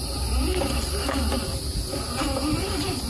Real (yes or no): yes